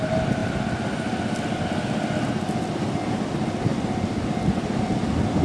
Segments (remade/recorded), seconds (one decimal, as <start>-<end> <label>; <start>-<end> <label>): 0.0-5.4 recorded